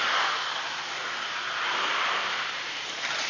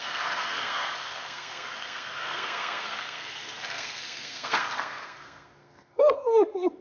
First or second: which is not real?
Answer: second